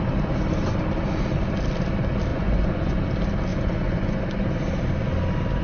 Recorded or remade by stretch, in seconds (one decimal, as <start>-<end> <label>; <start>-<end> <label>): 0.0-2.3 recorded; 2.3-3.1 remade; 3.1-3.5 recorded; 3.5-4.2 remade; 4.2-5.6 recorded